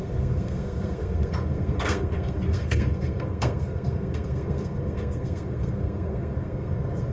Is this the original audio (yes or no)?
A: no